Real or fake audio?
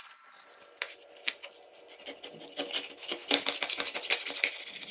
real